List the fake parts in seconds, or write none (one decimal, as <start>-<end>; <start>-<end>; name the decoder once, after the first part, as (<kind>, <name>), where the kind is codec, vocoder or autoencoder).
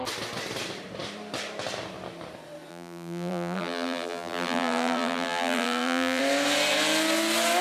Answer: 2.7-6.2 (vocoder, BigVGAN v2)